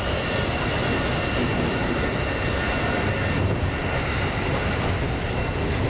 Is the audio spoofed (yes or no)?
no